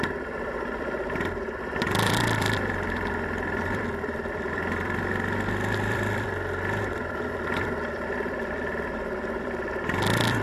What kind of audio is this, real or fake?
fake